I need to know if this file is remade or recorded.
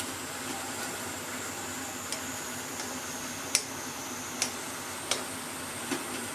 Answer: recorded